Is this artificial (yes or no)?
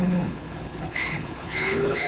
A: yes